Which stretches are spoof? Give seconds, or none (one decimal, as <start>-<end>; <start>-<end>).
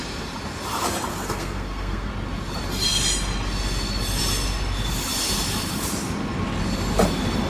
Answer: 1.1-2.1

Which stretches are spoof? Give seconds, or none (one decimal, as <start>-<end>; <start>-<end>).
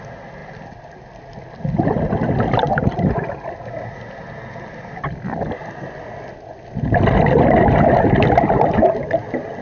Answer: none